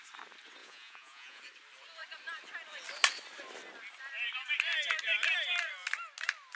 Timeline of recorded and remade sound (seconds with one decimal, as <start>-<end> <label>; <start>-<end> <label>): 0.0-0.6 recorded; 0.6-1.4 remade; 1.4-6.6 recorded